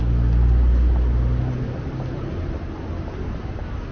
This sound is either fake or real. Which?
real